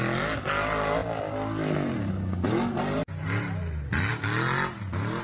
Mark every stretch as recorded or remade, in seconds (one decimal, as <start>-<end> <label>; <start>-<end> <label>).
0.0-5.2 recorded